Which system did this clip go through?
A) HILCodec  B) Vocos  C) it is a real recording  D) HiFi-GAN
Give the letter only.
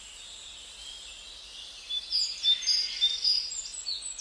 C